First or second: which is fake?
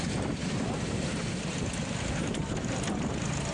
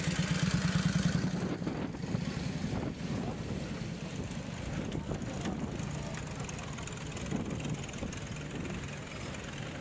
first